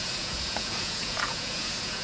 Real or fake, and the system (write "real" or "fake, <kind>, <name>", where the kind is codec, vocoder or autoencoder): fake, vocoder, Vocos